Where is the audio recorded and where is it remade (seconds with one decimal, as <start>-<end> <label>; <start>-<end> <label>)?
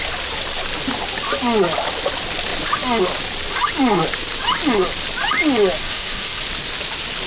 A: 0.0-5.8 recorded; 5.8-6.4 remade; 6.4-7.3 recorded